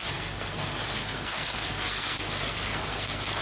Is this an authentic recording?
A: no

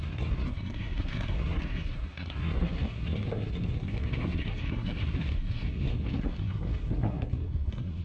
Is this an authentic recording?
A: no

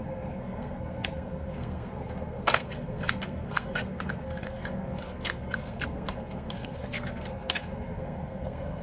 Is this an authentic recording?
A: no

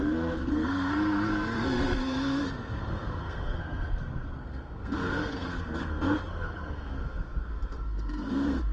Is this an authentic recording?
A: no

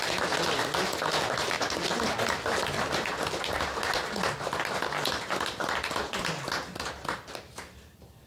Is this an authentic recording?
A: yes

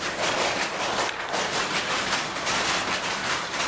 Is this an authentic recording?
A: yes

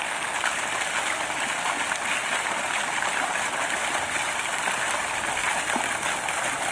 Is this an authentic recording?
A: yes